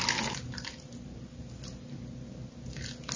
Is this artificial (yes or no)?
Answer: no